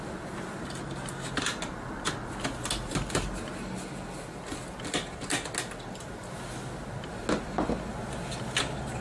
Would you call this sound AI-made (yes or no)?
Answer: no